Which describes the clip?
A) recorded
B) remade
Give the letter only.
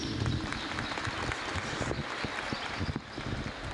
A